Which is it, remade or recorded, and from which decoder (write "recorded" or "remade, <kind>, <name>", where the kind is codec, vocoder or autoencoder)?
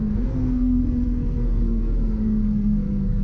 remade, codec, SNAC